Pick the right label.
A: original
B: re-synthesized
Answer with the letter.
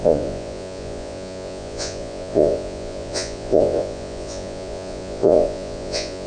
B